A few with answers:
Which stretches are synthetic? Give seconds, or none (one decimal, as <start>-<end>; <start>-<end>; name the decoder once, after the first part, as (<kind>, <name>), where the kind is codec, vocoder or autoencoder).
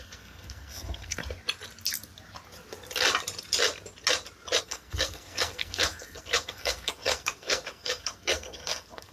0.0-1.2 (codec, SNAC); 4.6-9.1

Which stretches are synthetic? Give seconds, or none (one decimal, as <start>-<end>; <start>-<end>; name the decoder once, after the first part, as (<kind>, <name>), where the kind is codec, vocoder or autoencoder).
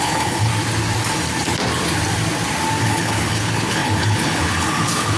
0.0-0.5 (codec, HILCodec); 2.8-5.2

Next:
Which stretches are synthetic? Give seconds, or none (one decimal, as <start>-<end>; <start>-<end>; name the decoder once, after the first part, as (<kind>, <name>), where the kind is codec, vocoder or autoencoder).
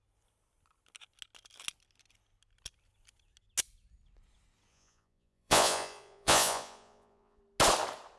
4.7-7.4 (vocoder, Vocos)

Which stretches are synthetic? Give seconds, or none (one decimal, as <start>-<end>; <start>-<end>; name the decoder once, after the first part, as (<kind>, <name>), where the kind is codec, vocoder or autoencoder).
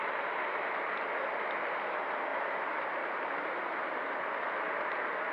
none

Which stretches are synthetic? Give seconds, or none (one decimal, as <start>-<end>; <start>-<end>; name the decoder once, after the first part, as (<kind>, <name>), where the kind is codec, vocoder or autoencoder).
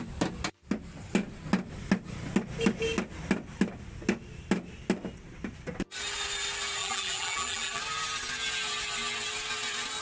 6.8-7.8 (vocoder, BigVGAN v2)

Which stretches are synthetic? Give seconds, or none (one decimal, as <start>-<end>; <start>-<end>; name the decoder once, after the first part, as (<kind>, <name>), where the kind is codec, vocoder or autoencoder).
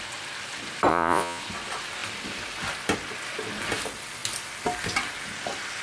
0.9-1.4 (vocoder, Vocos)